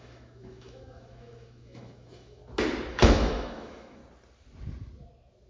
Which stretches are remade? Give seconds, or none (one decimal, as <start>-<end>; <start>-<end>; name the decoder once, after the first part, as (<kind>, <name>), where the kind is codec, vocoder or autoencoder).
0.0-2.4 (autoencoder, DAC-VAE); 2.9-4.0